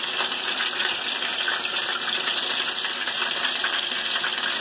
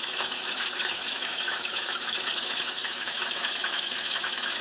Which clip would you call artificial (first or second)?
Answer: second